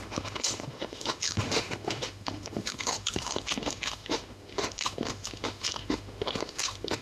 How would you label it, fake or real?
fake